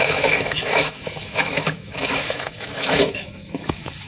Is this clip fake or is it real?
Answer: fake